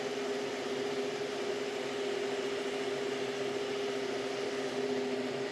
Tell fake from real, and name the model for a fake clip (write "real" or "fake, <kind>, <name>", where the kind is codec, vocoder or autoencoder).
real